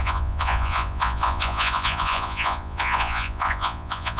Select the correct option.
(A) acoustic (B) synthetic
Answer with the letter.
B